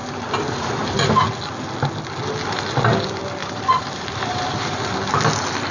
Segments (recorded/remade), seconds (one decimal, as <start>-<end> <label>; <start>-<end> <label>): 0.0-1.1 remade; 1.1-3.4 recorded; 3.4-4.9 remade; 4.9-5.7 recorded